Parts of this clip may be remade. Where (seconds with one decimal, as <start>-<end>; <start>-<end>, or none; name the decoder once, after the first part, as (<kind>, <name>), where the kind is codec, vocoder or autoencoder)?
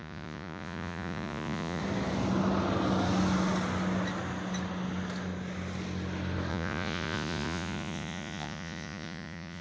0.0-1.8 (vocoder, Vocos); 6.5-9.6